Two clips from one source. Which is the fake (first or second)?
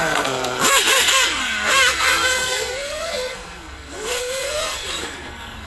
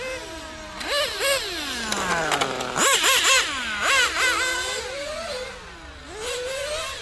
first